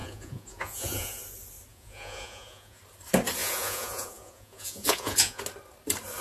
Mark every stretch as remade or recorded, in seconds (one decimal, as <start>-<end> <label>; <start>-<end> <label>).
0.0-1.2 remade; 1.2-1.7 recorded; 1.7-2.8 remade; 2.8-3.4 recorded; 3.4-5.4 remade; 5.4-6.2 recorded